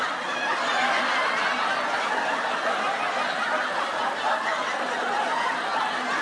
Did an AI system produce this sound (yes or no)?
no